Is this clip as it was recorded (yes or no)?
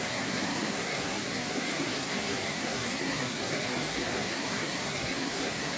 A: no